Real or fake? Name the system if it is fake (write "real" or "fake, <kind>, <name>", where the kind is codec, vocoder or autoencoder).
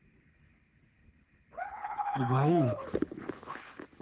fake, codec, HILCodec